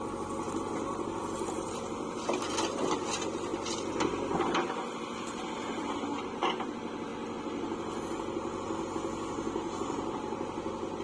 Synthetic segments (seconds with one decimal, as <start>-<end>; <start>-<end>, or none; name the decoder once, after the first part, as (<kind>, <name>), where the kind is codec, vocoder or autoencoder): none